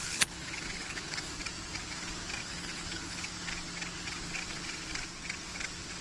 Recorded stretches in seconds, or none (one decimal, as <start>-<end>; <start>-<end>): 1.3-2.4; 3.3-6.0